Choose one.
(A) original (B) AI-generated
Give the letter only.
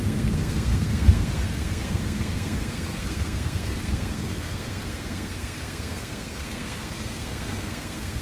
B